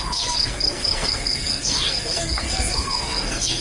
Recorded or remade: remade